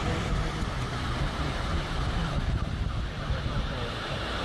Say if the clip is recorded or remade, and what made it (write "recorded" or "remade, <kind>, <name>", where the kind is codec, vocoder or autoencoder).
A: remade, vocoder, BigVGAN v2